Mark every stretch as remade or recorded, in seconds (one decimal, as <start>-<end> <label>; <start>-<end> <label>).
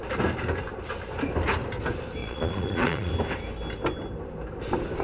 0.0-2.2 recorded; 2.2-3.1 remade; 3.1-5.0 recorded